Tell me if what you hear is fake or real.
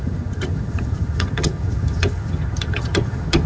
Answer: fake